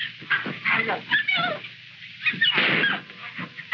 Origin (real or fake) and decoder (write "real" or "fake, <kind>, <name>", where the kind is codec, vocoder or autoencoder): real